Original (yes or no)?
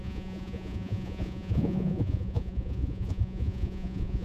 no